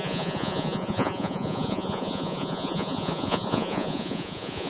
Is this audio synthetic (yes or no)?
yes